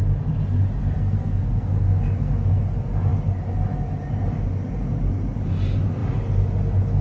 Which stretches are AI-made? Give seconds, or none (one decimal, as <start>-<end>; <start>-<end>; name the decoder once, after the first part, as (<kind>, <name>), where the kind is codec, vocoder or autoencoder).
0.8-2.6 (codec, SNAC)